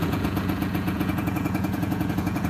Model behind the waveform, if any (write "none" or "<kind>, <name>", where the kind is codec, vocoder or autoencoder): vocoder, Vocos